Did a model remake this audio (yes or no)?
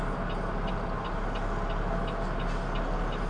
no